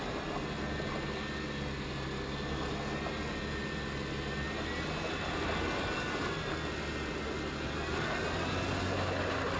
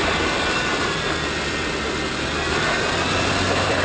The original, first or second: first